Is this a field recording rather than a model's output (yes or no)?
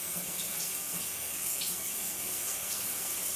no